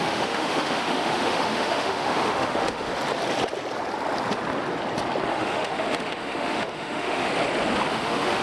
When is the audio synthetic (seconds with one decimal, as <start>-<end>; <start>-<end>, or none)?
0.0-2.9; 5.3-7.3; 7.9-8.4